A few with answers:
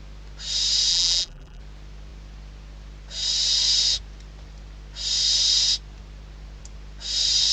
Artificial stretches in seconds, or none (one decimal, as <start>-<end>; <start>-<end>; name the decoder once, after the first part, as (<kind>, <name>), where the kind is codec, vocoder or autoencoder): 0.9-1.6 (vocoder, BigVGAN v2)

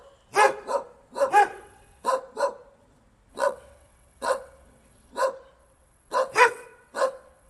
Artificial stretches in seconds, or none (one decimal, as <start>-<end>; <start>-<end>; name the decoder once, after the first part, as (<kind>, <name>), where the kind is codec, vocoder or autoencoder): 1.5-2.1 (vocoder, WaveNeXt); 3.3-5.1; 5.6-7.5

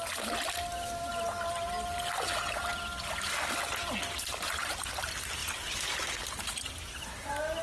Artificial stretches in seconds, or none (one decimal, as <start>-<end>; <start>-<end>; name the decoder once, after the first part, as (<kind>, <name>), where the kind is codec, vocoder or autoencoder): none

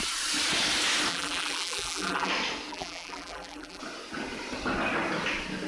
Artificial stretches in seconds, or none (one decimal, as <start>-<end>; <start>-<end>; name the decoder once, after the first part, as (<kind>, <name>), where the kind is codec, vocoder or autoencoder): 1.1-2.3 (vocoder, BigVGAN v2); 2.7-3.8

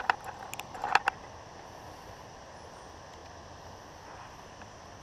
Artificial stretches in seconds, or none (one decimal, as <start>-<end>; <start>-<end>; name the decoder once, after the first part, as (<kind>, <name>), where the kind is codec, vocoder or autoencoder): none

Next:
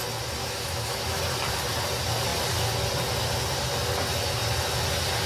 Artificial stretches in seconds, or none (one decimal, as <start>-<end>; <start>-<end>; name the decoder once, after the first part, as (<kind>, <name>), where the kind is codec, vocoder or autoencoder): 0.4-1.2 (autoencoder, DAC-VAE)

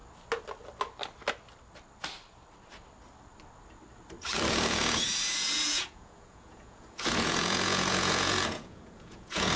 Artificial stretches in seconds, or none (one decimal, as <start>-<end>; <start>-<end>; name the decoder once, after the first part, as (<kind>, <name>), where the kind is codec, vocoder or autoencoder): 4.5-9.6 (vocoder, Vocos)

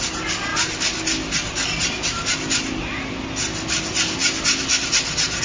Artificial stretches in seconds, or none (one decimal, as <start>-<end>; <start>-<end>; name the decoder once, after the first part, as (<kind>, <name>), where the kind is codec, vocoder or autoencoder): none